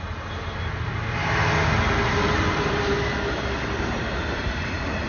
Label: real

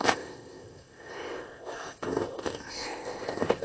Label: fake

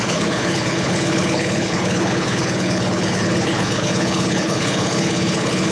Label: fake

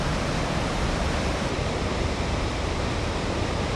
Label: real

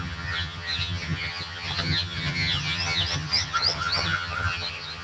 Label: fake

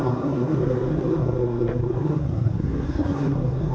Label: fake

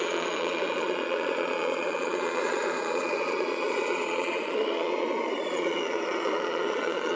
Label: fake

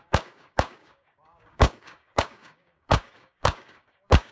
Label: fake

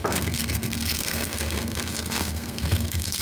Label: fake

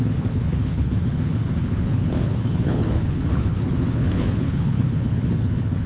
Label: fake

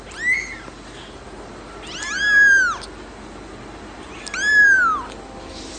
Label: real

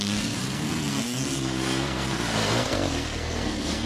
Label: fake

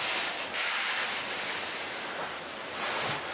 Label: fake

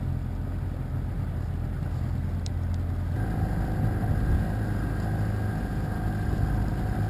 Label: real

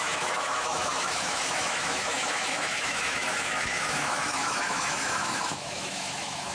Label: fake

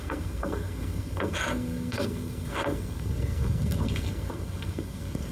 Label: fake